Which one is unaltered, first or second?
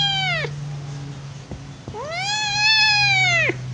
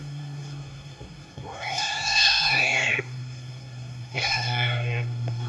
first